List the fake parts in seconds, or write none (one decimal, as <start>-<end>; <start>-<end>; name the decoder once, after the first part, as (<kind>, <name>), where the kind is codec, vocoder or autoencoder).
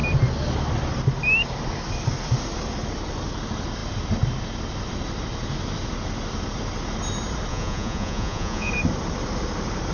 7.5-8.7 (vocoder, Vocos)